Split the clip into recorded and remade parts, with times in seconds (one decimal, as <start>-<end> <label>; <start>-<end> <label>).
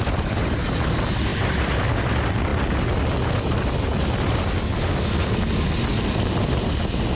0.0-7.2 recorded